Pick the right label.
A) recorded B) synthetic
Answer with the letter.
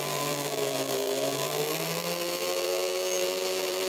B